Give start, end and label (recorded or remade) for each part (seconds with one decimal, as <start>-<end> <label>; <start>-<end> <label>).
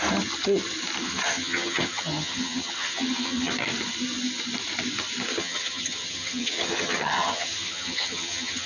0.0-1.0 recorded; 1.0-3.5 remade; 3.5-5.3 recorded; 5.3-8.7 remade